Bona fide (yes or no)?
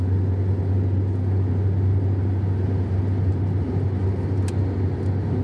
yes